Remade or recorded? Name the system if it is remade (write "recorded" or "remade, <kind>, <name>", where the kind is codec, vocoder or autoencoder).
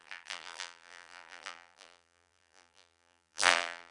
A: remade, vocoder, BigVGAN v2